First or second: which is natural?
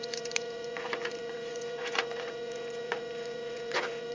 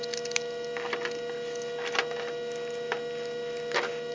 second